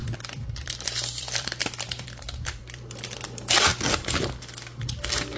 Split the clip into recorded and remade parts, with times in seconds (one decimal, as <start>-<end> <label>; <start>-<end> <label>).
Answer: 0.0-3.2 remade; 3.2-3.7 recorded; 3.7-4.4 remade; 4.4-5.4 recorded